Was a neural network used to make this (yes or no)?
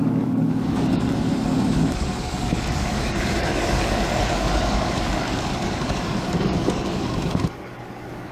yes